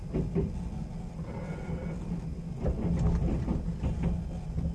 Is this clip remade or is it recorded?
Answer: recorded